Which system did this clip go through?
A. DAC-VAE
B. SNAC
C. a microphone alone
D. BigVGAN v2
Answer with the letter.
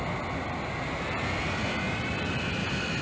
C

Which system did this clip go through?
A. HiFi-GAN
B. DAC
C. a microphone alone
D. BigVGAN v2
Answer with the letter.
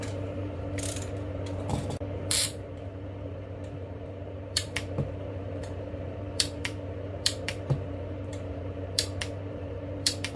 D